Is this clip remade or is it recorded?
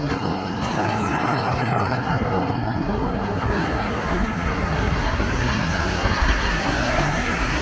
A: remade